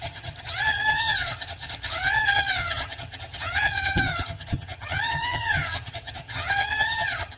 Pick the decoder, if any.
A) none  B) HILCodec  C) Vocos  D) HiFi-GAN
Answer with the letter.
D